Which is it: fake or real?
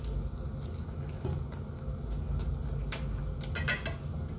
real